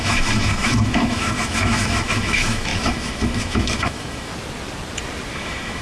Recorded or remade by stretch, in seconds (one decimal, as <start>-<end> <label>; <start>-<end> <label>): 0.0-4.3 remade; 4.3-5.3 recorded; 5.3-5.8 remade